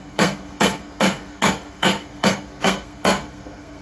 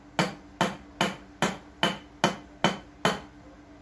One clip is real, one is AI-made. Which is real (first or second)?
second